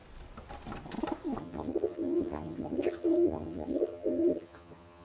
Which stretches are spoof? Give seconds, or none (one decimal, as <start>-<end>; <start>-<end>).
1.4-5.0

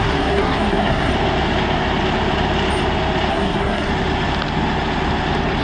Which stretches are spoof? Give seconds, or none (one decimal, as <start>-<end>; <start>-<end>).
0.0-1.1; 3.3-3.9

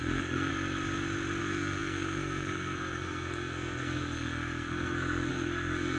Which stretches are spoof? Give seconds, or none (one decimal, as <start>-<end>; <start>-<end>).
0.0-0.5; 1.4-6.0

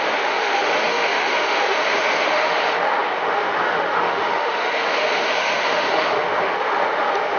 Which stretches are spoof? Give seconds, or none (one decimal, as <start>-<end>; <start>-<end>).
0.0-7.4